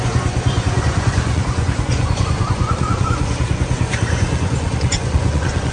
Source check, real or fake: fake